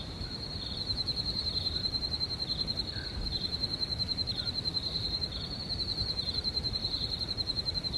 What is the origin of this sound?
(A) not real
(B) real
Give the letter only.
A